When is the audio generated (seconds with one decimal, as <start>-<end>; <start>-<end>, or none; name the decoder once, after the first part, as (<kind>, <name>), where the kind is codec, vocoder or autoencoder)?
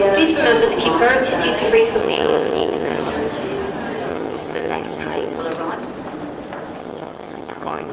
2.0-3.1 (vocoder, HiFi-GAN); 4.1-5.4; 6.8-7.9